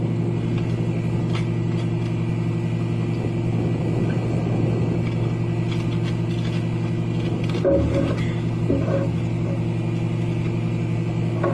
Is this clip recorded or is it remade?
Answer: recorded